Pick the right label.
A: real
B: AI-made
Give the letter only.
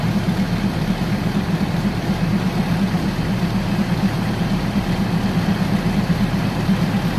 A